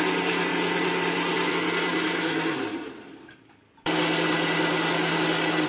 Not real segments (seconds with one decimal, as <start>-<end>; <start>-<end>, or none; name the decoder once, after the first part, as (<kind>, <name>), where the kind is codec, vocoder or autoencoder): none